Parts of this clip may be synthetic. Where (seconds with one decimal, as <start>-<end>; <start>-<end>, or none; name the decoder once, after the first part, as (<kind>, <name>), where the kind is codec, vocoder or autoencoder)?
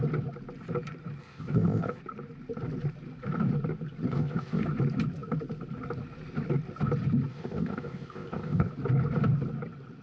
1.2-2.0 (codec, ZipCodec); 4.1-4.6; 7.3-8.7